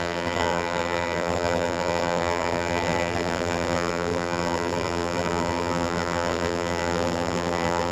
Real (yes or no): no